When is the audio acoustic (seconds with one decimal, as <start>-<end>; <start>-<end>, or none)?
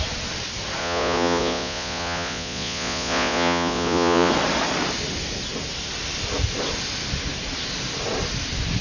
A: 0.0-0.8; 4.3-8.8